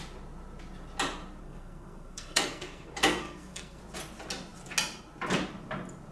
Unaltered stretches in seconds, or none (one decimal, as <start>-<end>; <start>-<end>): 0.0-1.4; 3.8-6.1

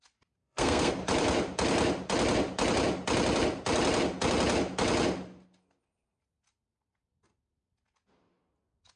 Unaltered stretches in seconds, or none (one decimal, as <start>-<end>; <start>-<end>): 0.0-0.4; 0.9-9.0

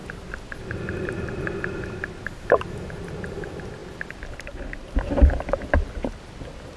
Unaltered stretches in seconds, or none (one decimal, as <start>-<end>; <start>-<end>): 0.0-6.8

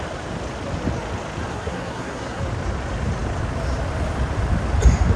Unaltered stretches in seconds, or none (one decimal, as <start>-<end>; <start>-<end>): 0.0-1.5; 2.4-5.2

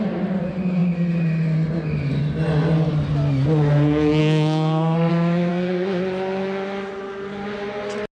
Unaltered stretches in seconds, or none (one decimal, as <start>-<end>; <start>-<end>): 0.0-4.2; 5.1-5.5; 6.0-8.1

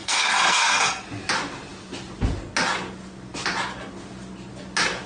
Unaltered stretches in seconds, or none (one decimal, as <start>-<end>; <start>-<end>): 1.0-5.1

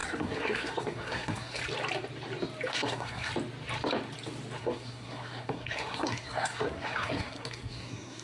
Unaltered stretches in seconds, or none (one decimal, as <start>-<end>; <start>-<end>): 1.6-2.7; 3.3-4.6